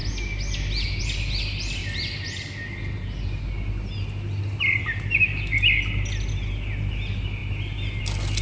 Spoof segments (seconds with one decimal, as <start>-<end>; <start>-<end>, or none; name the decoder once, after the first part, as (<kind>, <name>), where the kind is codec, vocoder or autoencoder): none